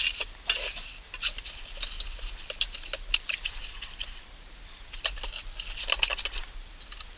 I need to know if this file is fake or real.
real